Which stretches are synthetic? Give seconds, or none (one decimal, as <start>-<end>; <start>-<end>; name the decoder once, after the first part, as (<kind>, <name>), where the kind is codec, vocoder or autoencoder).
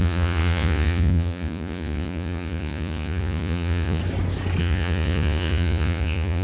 0.0-4.0 (vocoder, Vocos); 4.6-6.4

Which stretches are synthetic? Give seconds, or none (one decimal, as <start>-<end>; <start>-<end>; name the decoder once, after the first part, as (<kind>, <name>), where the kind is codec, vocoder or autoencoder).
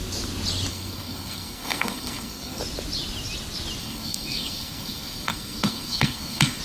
0.7-2.6 (codec, SNAC); 3.8-6.6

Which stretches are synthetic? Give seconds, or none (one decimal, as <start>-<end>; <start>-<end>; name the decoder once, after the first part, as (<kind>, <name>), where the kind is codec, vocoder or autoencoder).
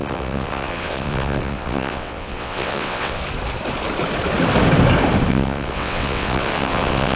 0.0-3.2 (vocoder, WaveNeXt); 5.3-7.2